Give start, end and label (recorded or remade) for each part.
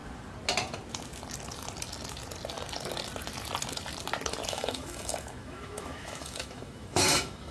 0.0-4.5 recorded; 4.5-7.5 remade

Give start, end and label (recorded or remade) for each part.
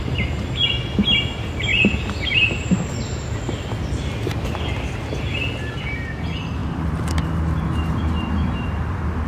0.0-9.3 recorded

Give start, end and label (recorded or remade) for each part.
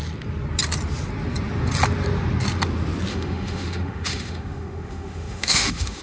0.0-3.1 recorded; 3.1-6.0 remade